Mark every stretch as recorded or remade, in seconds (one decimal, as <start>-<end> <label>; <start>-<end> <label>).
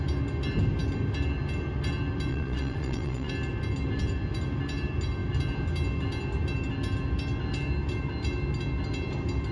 0.0-2.3 recorded; 2.3-3.3 remade; 3.3-9.5 recorded